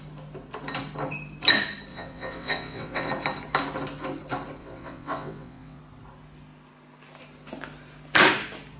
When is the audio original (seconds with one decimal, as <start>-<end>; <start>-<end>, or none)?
0.0-1.9; 3.1-4.6; 5.8-8.8